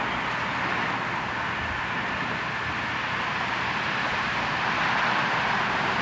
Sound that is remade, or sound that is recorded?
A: recorded